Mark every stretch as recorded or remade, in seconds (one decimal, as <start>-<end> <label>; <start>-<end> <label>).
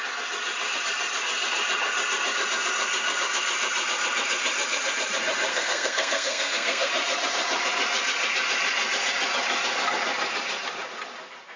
0.0-5.5 recorded; 5.5-6.9 remade; 6.9-11.6 recorded